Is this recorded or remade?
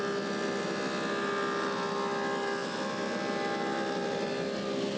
recorded